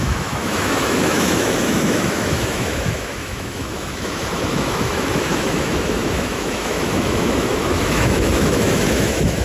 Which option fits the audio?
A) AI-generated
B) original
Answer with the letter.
A